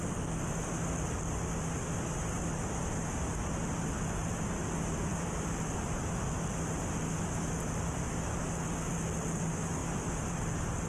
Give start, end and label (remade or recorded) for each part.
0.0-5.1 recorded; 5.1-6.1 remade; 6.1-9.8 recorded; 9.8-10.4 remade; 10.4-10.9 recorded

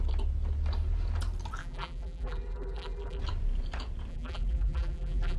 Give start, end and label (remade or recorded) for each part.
0.0-1.6 recorded; 1.6-3.2 remade; 3.2-4.1 recorded; 4.1-5.4 remade